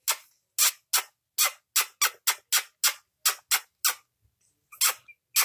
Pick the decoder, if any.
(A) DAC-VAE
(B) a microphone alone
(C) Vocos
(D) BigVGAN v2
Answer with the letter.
B